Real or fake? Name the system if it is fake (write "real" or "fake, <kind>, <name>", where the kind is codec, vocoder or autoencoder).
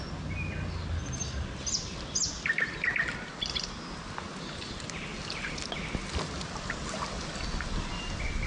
real